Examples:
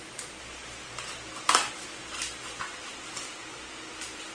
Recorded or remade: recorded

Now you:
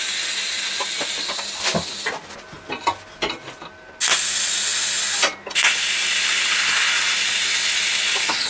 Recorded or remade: recorded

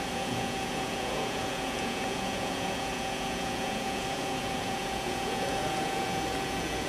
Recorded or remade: remade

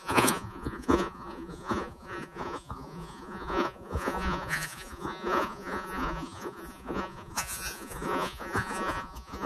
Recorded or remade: remade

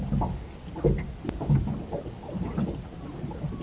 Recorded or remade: recorded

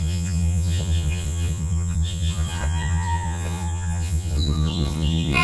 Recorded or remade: remade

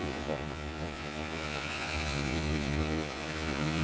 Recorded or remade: remade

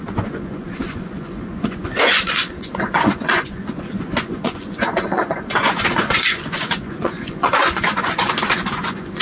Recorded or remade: remade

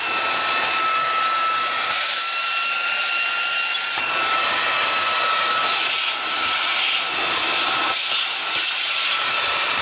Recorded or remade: recorded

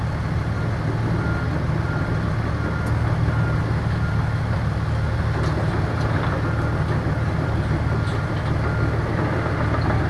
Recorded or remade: recorded